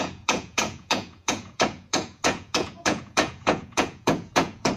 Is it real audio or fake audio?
fake